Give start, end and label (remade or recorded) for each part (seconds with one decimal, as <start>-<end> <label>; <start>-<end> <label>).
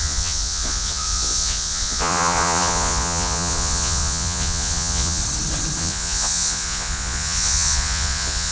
0.0-5.2 remade; 5.2-5.8 recorded; 5.8-8.5 remade